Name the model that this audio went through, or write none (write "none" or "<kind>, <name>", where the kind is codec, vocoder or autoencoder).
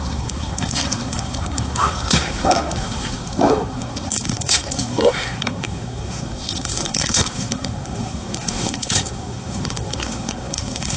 codec, SNAC